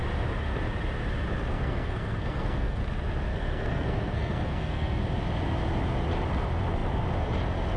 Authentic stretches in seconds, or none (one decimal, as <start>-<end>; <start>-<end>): 0.0-1.5; 2.8-3.3; 5.0-7.8